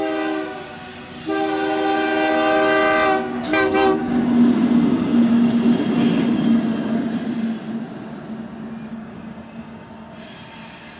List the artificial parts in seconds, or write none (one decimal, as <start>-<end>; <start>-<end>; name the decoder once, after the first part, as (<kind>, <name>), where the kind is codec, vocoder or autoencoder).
3.5-5.3 (codec, DAC); 8.9-9.9